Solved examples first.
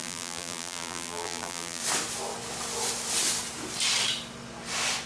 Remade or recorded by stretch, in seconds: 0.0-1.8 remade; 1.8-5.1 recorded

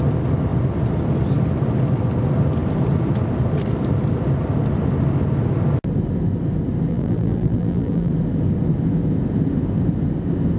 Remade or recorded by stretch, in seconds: 0.0-6.9 recorded; 6.9-8.1 remade; 8.1-10.6 recorded